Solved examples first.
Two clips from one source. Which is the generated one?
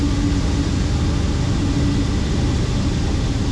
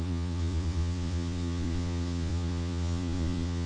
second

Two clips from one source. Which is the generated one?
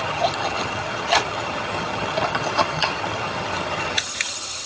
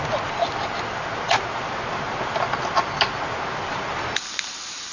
first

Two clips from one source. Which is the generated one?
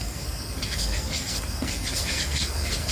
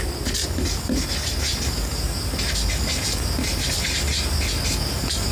first